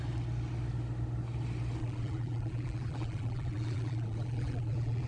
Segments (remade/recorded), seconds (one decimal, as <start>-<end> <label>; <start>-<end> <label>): 0.0-1.8 recorded; 1.8-5.1 remade